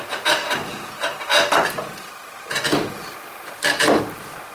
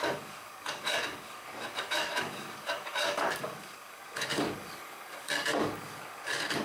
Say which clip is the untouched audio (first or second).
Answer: first